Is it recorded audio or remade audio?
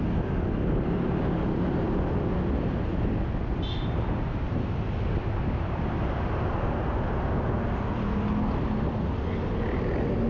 recorded